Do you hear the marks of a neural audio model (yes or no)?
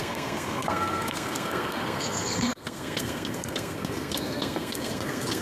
yes